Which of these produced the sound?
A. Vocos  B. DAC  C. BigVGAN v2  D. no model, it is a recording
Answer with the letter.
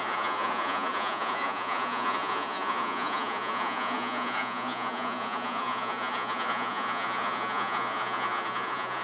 A